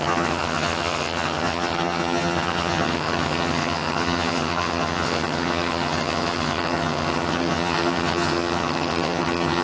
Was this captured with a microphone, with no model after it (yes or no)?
no